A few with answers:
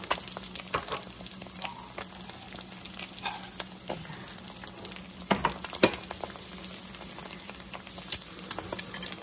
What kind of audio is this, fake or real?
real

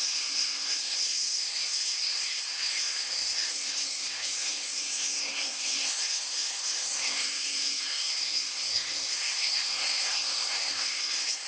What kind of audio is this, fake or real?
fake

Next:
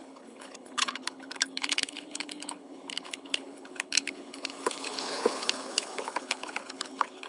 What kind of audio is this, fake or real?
fake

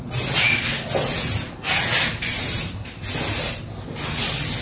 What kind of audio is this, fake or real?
real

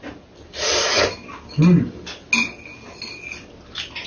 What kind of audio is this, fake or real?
real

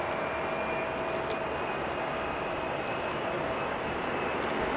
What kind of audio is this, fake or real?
real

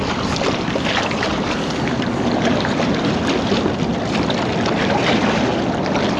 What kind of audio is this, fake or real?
real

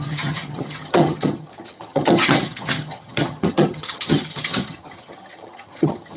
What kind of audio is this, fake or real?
fake